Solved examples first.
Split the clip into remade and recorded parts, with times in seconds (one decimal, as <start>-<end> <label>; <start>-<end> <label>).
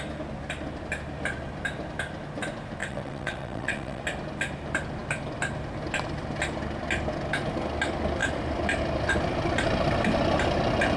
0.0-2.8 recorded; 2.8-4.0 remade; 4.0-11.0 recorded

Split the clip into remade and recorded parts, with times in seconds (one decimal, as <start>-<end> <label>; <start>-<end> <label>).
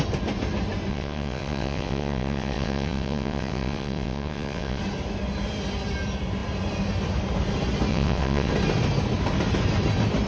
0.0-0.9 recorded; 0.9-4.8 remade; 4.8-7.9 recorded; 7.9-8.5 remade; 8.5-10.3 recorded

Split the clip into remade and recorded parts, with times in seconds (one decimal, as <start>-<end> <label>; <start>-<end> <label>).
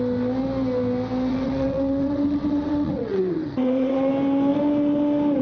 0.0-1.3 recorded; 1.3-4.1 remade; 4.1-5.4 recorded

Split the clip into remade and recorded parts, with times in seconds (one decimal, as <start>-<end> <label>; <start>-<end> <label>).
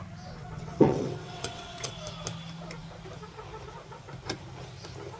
0.0-0.4 recorded; 0.4-1.9 remade; 1.9-5.2 recorded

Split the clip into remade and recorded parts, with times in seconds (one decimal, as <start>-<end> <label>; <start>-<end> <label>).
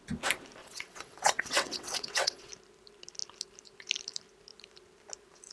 0.0-0.6 recorded; 0.6-2.5 remade; 2.5-5.5 recorded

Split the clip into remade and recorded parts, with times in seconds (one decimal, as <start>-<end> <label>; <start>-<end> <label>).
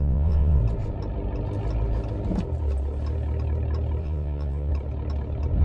0.0-0.6 remade; 0.6-4.0 recorded; 4.0-4.7 remade; 4.7-5.6 recorded